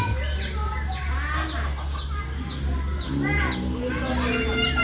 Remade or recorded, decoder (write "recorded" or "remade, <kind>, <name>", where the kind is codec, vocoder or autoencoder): recorded